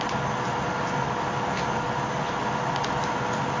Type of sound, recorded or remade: recorded